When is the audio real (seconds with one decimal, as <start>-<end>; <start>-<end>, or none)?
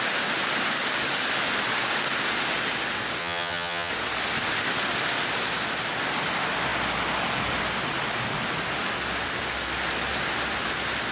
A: 0.0-3.2; 3.9-11.1